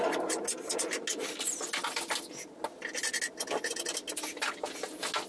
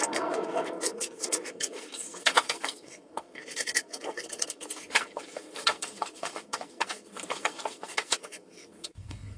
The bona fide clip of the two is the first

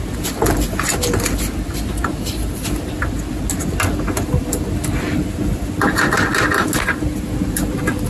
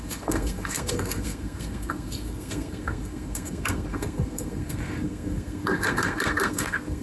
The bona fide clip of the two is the first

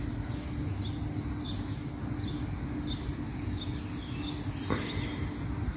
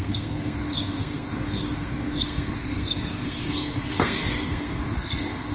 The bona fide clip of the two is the first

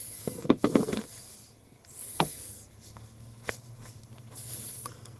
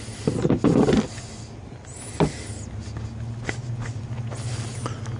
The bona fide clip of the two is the second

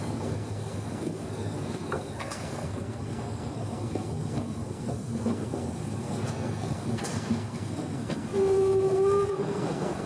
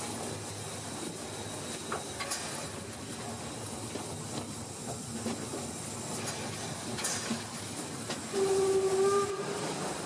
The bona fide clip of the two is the second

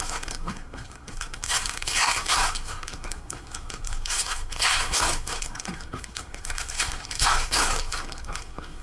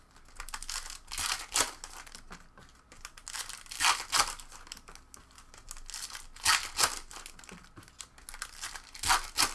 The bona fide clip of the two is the second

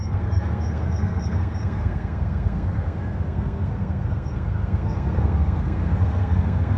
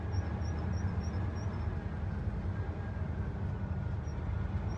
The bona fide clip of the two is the second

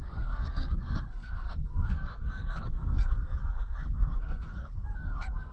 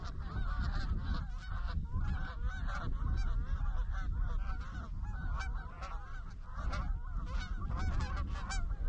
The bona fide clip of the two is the second